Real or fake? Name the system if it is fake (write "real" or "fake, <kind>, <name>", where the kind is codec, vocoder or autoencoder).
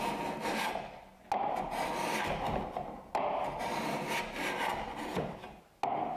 real